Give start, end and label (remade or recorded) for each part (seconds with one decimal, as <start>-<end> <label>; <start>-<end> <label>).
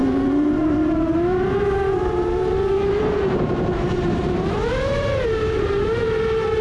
0.0-6.6 remade